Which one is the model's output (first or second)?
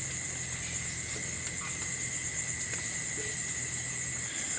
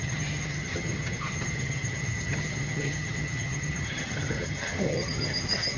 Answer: second